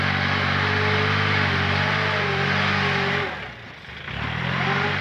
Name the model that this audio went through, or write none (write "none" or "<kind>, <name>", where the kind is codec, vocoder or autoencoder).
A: none